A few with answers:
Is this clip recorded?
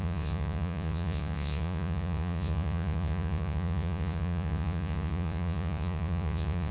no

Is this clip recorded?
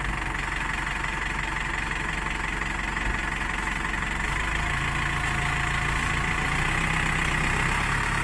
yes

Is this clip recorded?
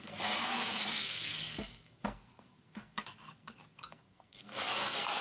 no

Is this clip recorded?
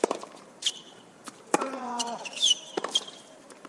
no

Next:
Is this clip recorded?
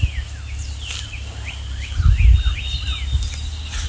yes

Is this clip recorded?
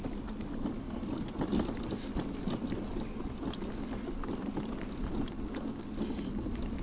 yes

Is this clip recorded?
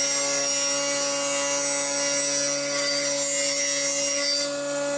yes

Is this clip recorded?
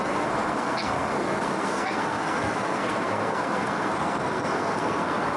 no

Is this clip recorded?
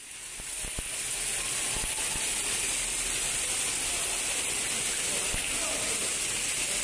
yes